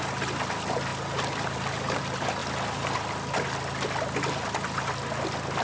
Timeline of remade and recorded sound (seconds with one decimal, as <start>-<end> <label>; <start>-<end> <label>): 0.0-0.9 recorded; 0.9-2.0 remade; 2.0-2.4 recorded; 2.4-4.8 remade; 4.8-5.6 recorded

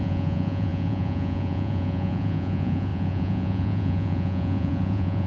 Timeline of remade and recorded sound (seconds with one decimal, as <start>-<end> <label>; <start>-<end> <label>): 0.0-5.3 remade